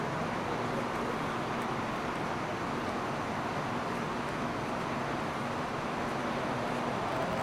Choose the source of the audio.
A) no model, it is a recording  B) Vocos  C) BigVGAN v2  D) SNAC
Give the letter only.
A